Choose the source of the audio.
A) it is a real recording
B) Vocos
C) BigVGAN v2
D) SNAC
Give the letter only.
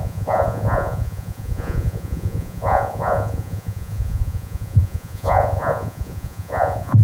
B